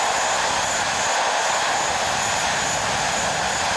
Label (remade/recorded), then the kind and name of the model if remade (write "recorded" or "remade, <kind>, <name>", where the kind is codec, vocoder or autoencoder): recorded